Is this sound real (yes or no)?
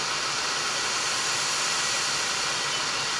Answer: yes